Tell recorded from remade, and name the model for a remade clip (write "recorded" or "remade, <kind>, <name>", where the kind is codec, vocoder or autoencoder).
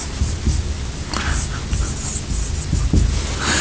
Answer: recorded